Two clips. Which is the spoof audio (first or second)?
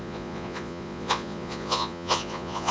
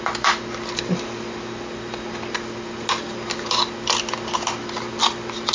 first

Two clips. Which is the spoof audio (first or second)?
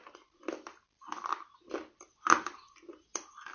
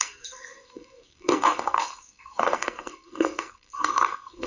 second